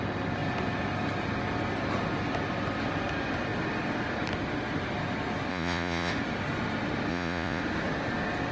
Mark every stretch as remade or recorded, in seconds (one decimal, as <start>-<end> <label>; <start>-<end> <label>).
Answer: 0.0-5.5 recorded; 5.5-6.1 remade; 6.1-7.1 recorded; 7.1-7.6 remade; 7.6-8.5 recorded